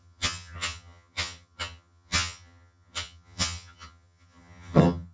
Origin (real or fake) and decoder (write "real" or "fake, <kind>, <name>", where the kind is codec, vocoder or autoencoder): fake, vocoder, HiFi-GAN